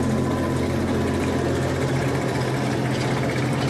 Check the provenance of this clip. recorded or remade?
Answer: recorded